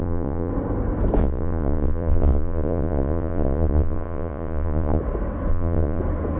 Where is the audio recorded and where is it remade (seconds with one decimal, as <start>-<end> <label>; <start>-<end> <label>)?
0.0-0.5 remade; 0.5-1.2 recorded; 1.2-5.0 remade; 5.0-5.5 recorded; 5.5-6.0 remade; 6.0-6.4 recorded